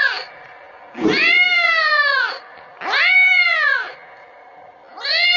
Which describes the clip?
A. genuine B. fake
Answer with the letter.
A